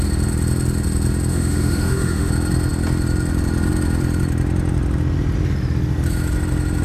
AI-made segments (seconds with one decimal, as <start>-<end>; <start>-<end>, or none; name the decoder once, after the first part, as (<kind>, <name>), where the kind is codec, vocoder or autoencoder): 1.3-2.3 (autoencoder, DAC-VAE)